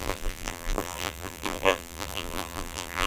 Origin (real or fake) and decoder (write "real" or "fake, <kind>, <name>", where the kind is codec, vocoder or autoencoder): fake, vocoder, BigVGAN v2